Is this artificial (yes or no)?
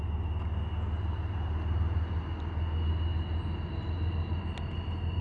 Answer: no